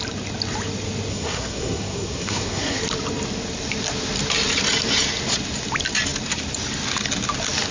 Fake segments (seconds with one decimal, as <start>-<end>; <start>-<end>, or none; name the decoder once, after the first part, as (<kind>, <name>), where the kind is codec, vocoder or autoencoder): 1.1-2.8 (codec, SNAC)